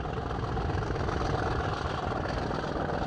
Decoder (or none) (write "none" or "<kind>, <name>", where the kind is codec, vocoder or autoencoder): none